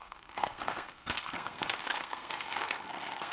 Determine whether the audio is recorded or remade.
remade